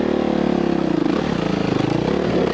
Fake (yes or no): no